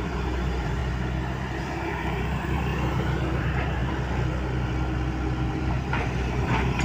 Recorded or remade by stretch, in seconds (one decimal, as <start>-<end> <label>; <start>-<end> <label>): 0.0-0.8 remade; 0.8-1.6 recorded; 1.6-2.7 remade; 2.7-3.4 recorded; 3.4-3.8 remade; 3.8-5.5 recorded; 5.5-6.8 remade